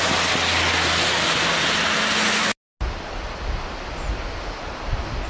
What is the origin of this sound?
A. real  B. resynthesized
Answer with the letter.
A